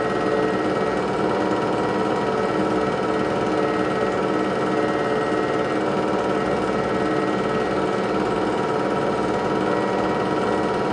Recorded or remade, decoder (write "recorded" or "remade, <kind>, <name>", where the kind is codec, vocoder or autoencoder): recorded